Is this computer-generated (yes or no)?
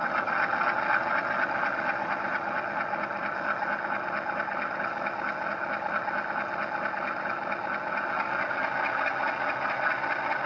no